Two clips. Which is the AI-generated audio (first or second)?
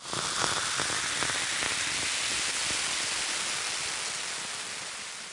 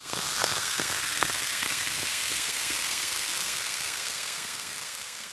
second